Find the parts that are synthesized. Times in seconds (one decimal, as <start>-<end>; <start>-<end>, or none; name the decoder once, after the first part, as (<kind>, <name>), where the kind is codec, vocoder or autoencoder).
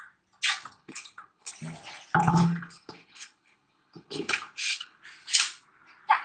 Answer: 0.8-1.5 (codec, HILCodec); 2.2-5.0